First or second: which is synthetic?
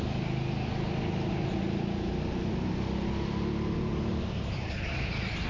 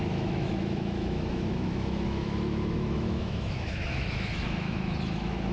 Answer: second